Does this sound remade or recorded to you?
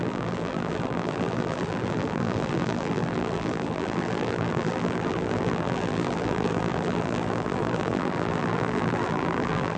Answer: remade